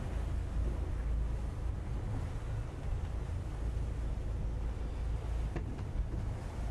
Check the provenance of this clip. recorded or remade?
recorded